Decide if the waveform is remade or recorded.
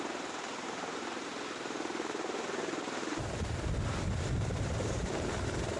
remade